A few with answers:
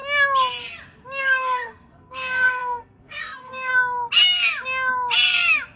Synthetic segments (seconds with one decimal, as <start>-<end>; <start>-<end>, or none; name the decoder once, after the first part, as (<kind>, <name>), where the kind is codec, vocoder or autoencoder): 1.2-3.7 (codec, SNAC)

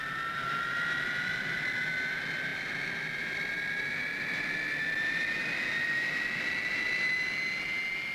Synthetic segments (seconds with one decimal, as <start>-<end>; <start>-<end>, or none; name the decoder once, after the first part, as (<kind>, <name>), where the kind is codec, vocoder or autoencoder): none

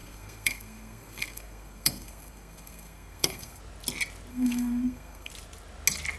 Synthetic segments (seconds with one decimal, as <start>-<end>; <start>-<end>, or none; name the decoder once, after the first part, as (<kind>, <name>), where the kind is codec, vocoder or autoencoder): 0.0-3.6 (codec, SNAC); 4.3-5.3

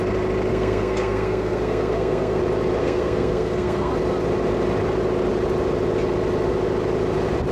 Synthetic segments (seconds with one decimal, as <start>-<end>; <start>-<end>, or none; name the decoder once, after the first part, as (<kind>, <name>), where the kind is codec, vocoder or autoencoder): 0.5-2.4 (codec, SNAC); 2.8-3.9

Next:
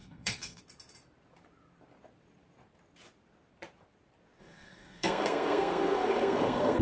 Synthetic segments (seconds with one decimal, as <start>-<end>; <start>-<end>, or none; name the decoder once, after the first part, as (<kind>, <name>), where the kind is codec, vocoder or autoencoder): 0.0-0.6 (codec, SNAC); 4.4-6.8

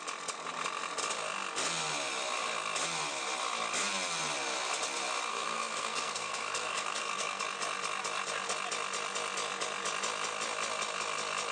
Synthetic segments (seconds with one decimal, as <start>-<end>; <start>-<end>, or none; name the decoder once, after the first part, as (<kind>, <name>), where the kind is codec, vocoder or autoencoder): 5.3-7.4 (codec, SNAC)